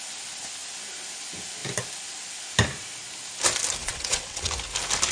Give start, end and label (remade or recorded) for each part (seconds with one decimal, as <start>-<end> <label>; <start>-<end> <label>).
0.0-3.8 recorded; 3.8-4.5 remade; 4.5-5.1 recorded